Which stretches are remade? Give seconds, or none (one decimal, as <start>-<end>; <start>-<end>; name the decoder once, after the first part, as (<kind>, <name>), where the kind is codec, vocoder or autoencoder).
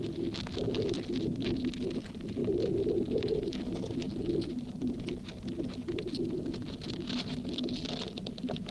none